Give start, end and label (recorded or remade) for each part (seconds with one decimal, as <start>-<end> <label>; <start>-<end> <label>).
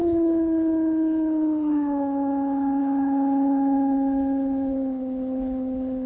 0.0-6.1 remade